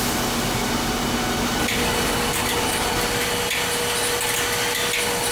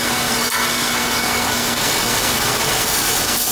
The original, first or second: first